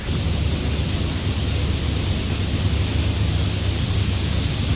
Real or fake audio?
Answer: real